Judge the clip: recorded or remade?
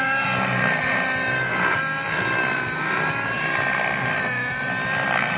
recorded